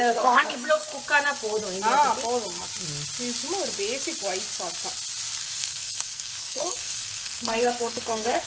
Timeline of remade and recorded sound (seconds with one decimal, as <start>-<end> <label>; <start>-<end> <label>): 0.0-0.9 remade; 0.9-5.4 recorded; 5.4-8.5 remade